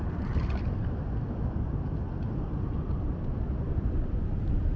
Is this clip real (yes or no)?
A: yes